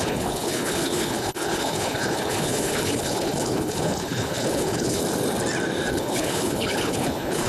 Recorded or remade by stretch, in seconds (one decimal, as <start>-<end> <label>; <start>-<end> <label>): 0.0-5.0 remade; 5.0-5.9 recorded; 5.9-7.5 remade